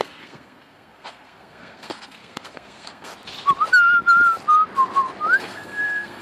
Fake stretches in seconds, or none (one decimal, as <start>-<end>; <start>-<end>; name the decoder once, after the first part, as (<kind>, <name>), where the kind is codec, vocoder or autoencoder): 0.0-3.1 (codec, SNAC); 5.4-6.2